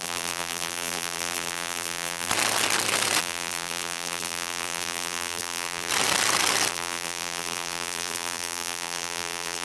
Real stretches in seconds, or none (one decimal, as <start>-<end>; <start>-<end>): 2.3-3.2; 5.9-6.7